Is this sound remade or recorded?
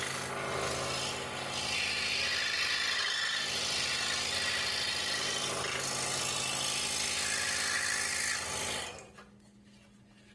recorded